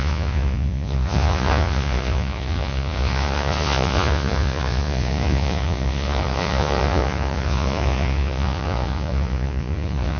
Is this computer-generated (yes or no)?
yes